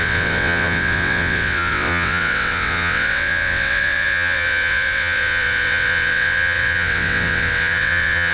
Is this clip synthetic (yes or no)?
yes